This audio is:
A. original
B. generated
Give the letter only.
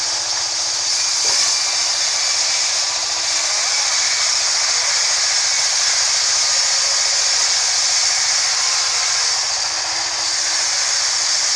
A